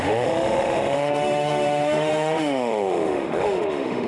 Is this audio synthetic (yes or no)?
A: yes